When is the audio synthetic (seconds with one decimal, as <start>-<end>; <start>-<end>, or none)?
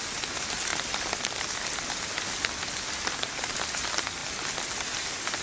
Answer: none